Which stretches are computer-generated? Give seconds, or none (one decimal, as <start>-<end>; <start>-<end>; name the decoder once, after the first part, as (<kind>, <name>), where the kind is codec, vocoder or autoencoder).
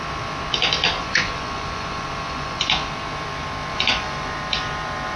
1.0-2.9 (vocoder, Vocos); 3.7-4.3